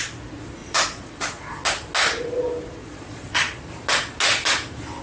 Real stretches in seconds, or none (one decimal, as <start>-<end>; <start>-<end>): 0.0-0.6; 1.6-2.8; 3.6-5.0